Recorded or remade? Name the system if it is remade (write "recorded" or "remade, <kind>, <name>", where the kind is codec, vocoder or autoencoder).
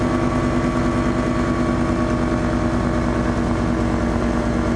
recorded